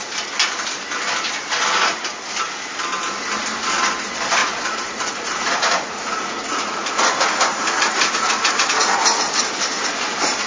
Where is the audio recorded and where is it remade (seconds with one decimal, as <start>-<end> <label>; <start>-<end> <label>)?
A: 0.0-4.4 recorded; 4.4-9.4 remade; 9.4-10.5 recorded